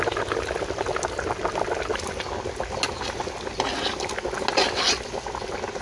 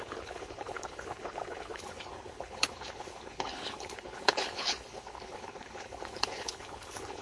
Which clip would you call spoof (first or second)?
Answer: second